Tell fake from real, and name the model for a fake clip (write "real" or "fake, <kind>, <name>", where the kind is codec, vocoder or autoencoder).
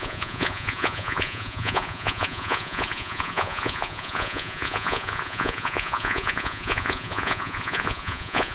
fake, vocoder, Vocos